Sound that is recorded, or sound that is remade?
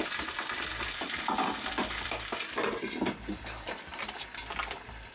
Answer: recorded